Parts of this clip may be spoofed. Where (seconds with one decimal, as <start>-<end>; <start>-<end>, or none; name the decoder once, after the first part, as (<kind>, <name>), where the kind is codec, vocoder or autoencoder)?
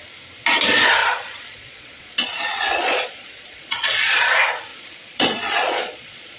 1.0-4.3 (vocoder, Vocos); 4.7-6.4